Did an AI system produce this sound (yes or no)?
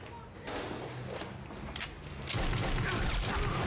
no